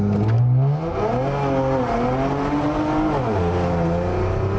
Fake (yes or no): no